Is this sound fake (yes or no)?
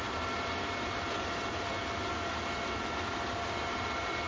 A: yes